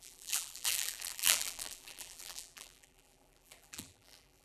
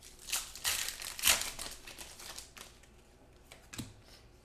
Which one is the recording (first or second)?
second